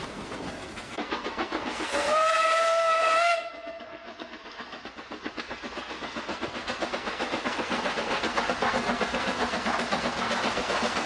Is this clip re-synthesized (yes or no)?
yes